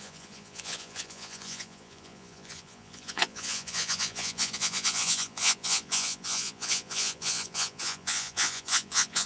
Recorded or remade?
remade